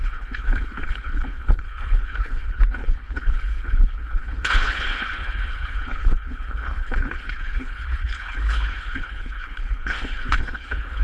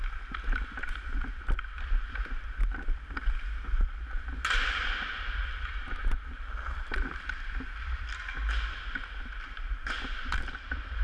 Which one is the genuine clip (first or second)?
second